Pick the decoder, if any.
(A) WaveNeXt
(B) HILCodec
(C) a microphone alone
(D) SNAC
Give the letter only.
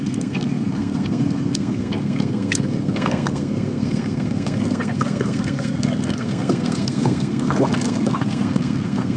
D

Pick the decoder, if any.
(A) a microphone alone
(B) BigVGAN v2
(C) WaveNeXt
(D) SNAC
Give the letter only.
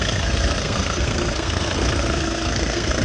D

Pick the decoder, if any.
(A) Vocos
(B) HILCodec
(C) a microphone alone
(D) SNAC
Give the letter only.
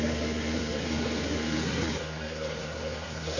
D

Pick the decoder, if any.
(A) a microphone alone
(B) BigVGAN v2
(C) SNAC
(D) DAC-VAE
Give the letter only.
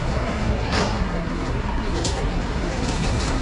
C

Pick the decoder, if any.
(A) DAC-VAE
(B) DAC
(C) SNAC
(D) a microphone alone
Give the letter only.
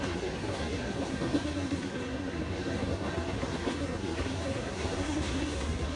C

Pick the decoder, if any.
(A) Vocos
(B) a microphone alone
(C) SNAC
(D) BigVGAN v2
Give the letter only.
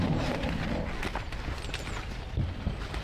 B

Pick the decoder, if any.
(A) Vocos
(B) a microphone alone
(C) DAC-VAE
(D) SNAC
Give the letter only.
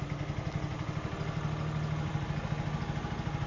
B